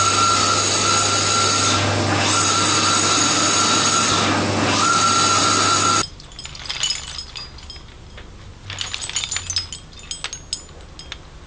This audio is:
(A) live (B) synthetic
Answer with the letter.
A